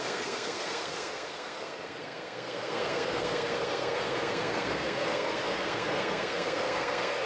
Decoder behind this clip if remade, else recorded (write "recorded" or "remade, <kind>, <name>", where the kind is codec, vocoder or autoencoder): remade, codec, SNAC